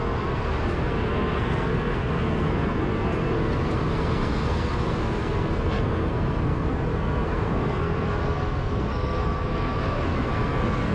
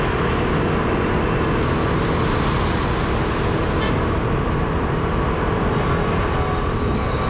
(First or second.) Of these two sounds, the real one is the second